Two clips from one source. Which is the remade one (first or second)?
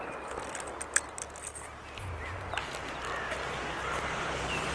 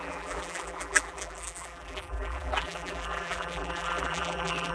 second